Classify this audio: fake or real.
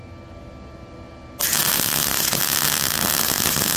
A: real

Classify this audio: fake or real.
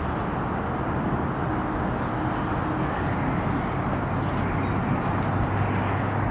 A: real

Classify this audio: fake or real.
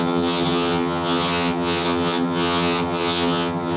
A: fake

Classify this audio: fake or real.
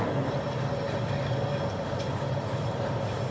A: real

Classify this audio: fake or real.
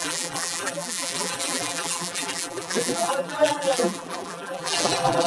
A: fake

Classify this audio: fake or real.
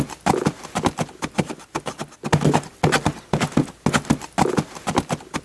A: real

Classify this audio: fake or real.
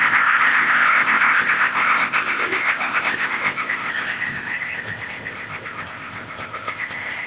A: fake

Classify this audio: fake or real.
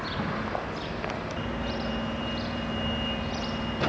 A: real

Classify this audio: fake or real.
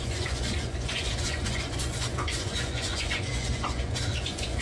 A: fake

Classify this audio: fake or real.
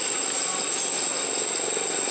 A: real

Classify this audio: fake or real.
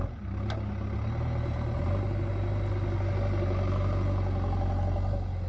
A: real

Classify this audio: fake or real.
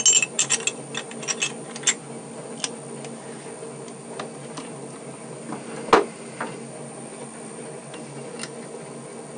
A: real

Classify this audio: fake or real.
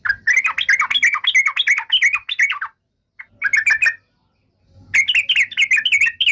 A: real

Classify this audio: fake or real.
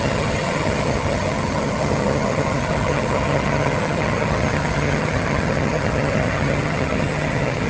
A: fake